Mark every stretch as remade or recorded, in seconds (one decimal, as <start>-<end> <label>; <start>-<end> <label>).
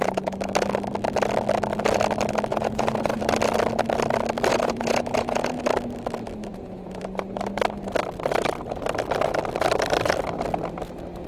0.0-2.5 recorded; 2.5-3.2 remade; 3.2-4.5 recorded; 4.5-5.6 remade; 5.6-6.5 recorded; 6.5-7.0 remade; 7.0-11.3 recorded